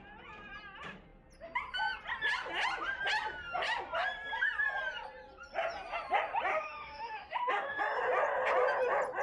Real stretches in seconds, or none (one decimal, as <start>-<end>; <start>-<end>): 0.0-6.5; 7.8-9.2